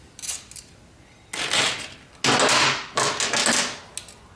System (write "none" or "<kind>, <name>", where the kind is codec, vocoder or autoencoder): none